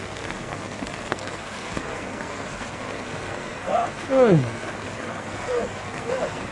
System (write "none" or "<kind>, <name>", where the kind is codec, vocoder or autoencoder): codec, SNAC